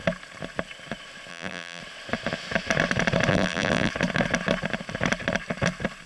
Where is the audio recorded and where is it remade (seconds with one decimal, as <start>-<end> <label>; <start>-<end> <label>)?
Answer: 0.0-1.3 recorded; 1.3-1.8 remade; 1.8-3.3 recorded; 3.3-3.9 remade; 3.9-6.1 recorded